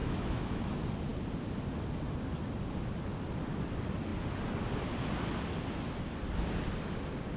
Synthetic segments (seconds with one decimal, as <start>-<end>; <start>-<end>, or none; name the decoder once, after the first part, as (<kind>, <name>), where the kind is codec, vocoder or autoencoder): 0.0-0.7 (autoencoder, DAC-VAE)